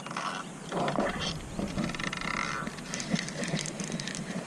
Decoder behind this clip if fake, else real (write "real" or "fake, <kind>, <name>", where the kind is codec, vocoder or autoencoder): real